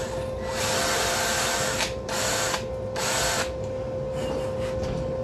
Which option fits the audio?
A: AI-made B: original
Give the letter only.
B